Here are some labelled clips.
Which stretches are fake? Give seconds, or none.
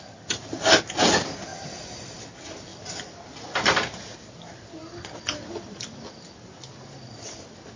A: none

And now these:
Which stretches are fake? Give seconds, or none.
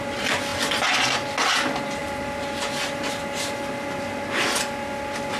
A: none